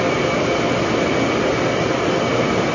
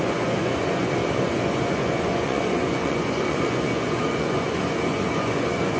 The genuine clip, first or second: first